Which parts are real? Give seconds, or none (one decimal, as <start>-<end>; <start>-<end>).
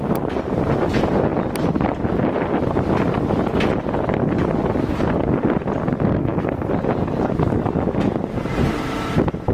0.0-6.2; 6.7-9.5